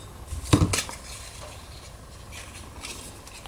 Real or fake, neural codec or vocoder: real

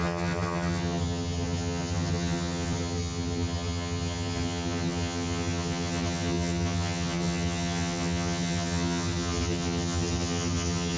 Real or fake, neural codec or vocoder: fake, vocoder, HiFi-GAN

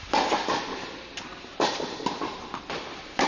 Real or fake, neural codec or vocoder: real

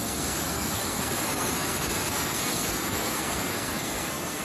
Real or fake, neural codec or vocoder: fake, codec, SNAC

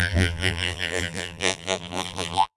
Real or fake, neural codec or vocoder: fake, vocoder, BigVGAN v2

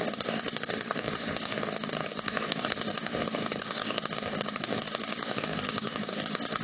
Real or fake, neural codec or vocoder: fake, codec, DAC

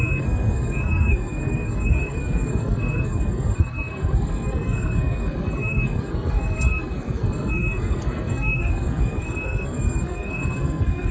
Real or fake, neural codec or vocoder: fake, codec, SNAC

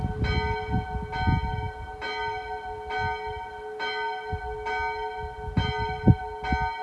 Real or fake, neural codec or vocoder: real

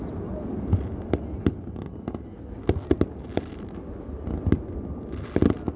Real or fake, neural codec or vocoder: real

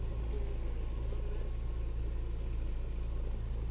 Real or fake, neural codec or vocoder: real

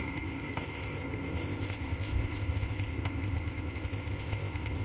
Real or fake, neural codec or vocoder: fake, codec, ZipCodec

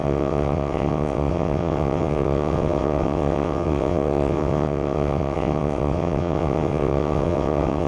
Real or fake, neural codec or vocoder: fake, vocoder, WaveNeXt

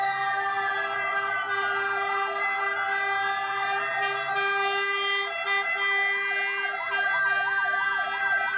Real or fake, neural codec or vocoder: real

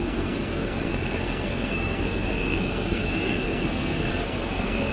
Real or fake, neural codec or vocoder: fake, codec, SNAC